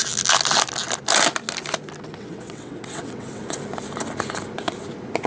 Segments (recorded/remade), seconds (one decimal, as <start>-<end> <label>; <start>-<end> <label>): 0.0-2.2 recorded; 2.2-3.4 remade; 3.4-5.3 recorded